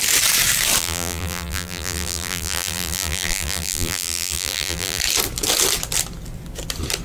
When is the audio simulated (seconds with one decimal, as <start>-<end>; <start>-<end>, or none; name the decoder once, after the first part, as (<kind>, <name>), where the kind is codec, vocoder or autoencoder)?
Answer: 0.8-5.0 (vocoder, BigVGAN v2)